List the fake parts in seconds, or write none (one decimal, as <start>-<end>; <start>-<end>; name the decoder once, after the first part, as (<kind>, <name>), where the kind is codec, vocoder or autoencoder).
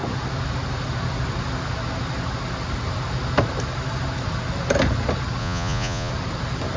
5.4-6.1 (vocoder, Vocos)